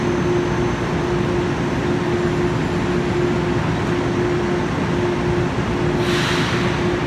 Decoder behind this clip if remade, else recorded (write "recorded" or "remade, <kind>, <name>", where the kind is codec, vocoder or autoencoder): recorded